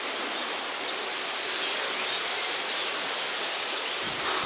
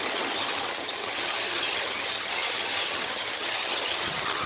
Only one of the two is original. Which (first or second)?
first